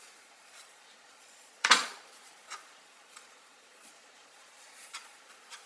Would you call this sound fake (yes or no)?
yes